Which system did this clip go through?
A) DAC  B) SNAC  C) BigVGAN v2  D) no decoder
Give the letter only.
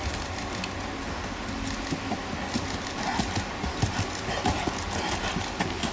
D